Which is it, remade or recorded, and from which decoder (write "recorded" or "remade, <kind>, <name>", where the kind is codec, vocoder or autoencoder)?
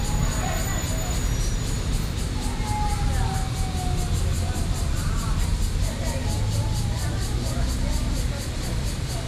recorded